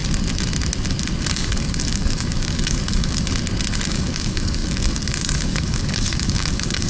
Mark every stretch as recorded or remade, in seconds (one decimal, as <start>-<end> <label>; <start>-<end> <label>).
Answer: 0.0-1.3 recorded; 1.3-3.3 remade; 3.3-3.9 recorded; 3.9-6.9 remade